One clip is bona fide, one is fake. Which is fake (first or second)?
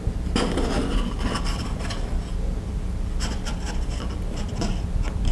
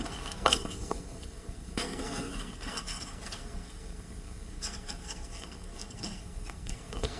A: second